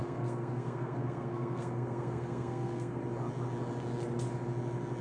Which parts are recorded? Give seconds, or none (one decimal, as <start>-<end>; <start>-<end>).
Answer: 3.0-5.0